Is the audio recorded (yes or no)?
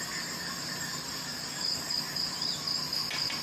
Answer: yes